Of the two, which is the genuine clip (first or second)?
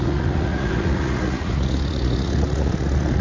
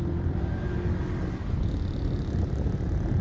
second